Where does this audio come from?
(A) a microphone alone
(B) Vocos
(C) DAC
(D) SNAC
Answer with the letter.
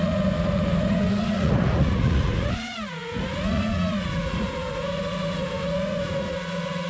B